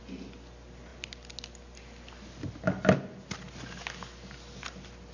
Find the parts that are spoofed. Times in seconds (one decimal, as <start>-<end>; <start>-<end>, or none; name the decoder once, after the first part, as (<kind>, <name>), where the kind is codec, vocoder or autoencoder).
none

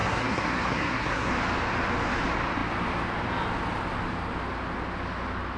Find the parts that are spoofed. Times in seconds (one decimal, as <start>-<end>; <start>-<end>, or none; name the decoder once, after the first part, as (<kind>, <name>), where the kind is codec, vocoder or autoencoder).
0.0-1.3 (codec, SNAC)

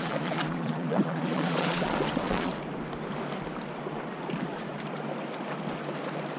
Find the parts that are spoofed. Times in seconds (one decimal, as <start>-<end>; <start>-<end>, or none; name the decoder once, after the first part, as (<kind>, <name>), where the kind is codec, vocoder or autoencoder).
0.0-2.5 (vocoder, Vocos)

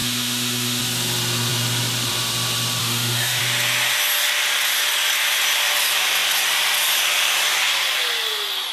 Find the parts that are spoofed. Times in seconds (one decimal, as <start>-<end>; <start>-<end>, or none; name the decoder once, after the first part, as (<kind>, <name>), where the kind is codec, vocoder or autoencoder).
0.0-0.8 (autoencoder, DAC-VAE); 2.8-3.4

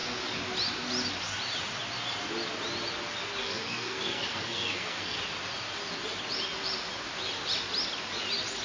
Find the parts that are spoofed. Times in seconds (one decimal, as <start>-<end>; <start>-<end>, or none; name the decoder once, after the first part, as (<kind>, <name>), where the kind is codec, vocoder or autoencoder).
3.4-5.2 (codec, SNAC)

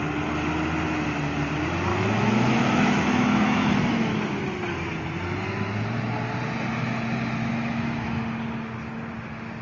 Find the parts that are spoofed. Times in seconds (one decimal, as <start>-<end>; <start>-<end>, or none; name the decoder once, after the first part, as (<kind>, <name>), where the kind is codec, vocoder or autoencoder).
1.9-4.4 (autoencoder, DAC-VAE); 7.4-8.2